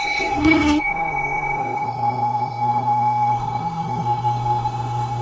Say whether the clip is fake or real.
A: fake